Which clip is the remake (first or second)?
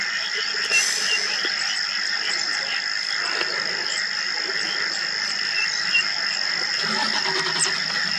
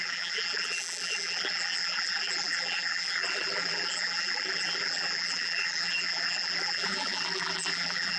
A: second